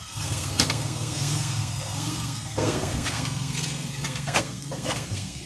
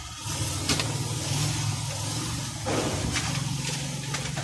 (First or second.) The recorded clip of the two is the second